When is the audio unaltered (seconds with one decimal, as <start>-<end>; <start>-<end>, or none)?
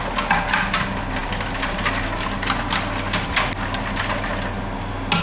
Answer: 0.0-5.2